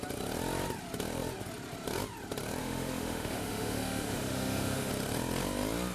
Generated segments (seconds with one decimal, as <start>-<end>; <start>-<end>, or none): 2.6-4.9